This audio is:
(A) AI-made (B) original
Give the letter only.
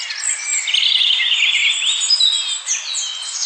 B